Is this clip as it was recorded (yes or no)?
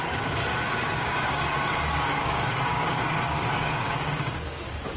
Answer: no